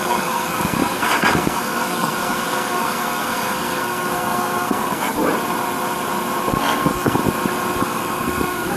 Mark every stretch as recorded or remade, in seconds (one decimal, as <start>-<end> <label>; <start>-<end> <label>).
0.0-5.1 remade; 5.1-6.5 recorded; 6.5-7.2 remade; 7.2-7.8 recorded; 7.8-8.8 remade